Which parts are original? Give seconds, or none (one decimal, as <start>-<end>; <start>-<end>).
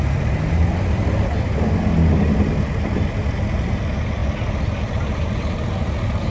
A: 0.0-6.3